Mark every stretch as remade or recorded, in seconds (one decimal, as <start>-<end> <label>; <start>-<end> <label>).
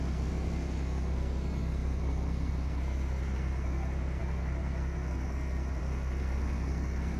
0.0-7.2 remade